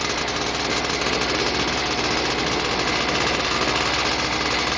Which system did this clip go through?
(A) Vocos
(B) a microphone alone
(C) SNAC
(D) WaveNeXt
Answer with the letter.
B